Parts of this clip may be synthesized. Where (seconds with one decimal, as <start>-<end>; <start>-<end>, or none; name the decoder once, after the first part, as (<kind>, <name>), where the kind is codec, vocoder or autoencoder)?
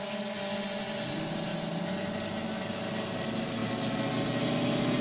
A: none